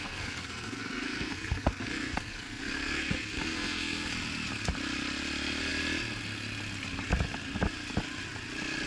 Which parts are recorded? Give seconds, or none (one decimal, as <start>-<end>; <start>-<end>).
4.1-8.9